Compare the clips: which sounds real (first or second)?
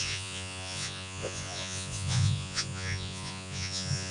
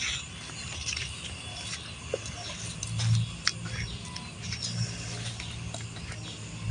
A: second